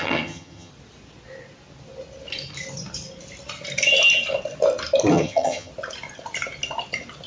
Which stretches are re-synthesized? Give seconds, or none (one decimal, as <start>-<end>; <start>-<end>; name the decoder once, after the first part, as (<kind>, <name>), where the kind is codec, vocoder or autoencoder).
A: 0.0-0.7 (vocoder, HiFi-GAN); 5.1-5.7